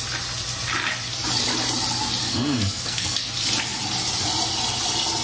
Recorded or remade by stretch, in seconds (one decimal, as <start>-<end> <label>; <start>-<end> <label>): 0.0-2.2 recorded; 2.2-3.3 remade; 3.3-5.2 recorded